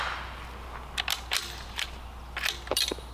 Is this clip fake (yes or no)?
no